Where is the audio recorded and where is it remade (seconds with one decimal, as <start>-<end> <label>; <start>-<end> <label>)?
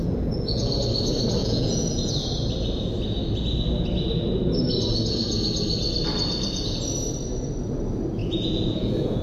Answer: 0.0-0.7 remade; 0.7-1.4 recorded; 1.4-2.1 remade; 2.1-8.2 recorded; 8.2-9.2 remade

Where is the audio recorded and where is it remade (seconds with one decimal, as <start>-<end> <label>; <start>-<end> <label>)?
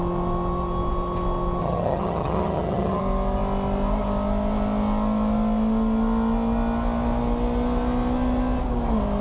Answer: 0.0-1.6 recorded; 1.6-3.0 remade; 3.0-9.2 recorded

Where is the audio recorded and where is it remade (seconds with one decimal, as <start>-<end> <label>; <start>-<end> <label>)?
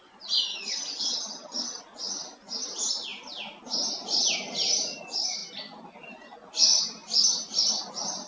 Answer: 0.0-0.5 recorded; 0.5-1.8 remade; 1.8-8.3 recorded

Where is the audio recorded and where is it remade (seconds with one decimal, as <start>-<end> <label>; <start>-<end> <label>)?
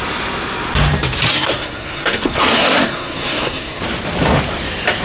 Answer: 0.0-1.3 recorded; 1.3-3.8 remade; 3.8-5.0 recorded